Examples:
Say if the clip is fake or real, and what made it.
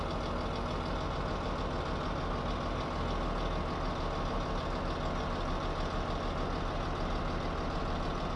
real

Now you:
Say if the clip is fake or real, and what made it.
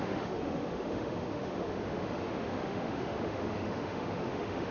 fake, autoencoder, DAC-VAE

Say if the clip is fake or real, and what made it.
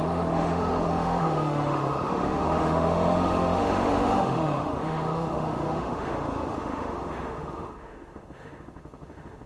fake, autoencoder, DAC-VAE